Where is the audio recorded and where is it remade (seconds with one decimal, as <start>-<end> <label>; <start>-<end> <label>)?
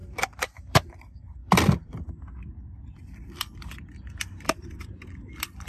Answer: 0.0-0.9 remade; 0.9-1.4 recorded; 1.4-4.8 remade; 4.8-5.7 recorded